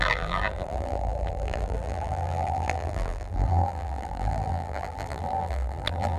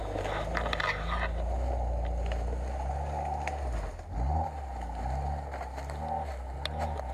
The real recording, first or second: second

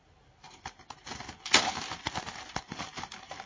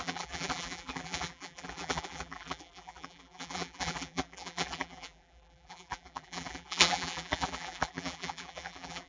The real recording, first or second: first